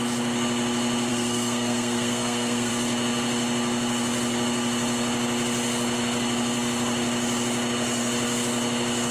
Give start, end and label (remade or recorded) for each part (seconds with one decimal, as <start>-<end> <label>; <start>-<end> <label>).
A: 0.0-1.1 recorded; 1.1-2.7 remade; 2.7-9.1 recorded